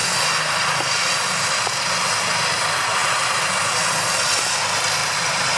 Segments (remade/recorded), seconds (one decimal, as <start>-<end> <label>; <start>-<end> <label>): 0.0-5.0 recorded; 5.0-5.6 remade